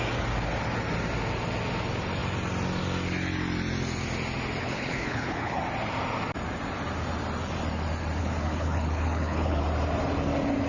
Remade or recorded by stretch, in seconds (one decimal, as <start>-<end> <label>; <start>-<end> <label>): 0.0-4.6 recorded; 4.6-5.6 remade; 5.6-8.2 recorded; 8.2-9.6 remade; 9.6-10.7 recorded